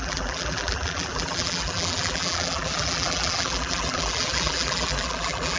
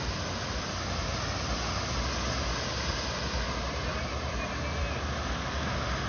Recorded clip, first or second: second